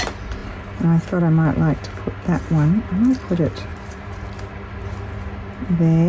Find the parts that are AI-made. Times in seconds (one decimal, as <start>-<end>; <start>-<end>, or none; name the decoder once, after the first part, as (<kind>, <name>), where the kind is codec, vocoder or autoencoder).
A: 3.7-4.3 (vocoder, BigVGAN v2)